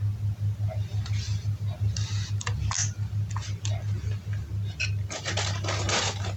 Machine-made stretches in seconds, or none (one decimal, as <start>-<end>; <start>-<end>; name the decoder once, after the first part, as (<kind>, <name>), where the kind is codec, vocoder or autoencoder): none